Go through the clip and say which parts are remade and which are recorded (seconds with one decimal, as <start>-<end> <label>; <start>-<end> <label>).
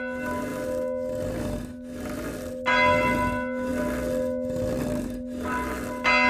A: 0.0-6.3 recorded